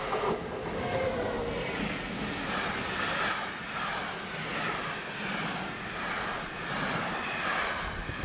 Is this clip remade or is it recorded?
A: recorded